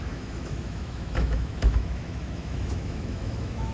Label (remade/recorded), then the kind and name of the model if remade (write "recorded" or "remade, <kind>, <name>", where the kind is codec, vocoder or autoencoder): remade, autoencoder, DAC-VAE